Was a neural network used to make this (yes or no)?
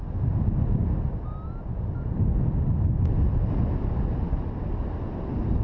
no